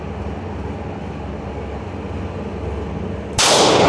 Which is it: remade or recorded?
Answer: recorded